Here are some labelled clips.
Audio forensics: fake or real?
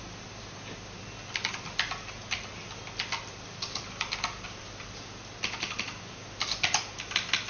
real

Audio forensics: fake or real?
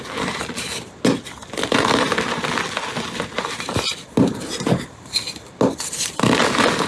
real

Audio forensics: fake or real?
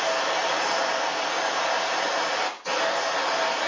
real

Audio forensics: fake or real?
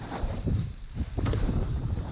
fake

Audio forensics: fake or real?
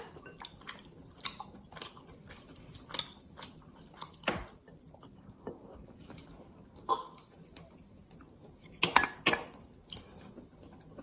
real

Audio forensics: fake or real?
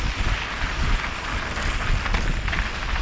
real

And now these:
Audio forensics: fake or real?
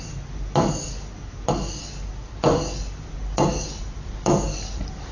real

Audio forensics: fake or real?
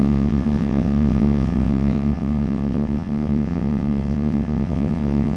fake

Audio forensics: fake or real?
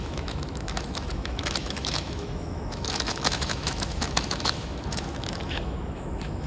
fake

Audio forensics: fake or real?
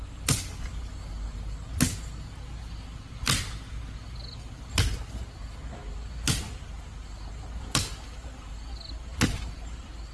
real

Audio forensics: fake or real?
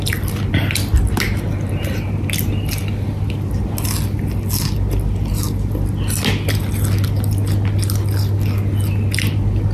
real